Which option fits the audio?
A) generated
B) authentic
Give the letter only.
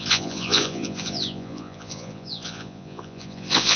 A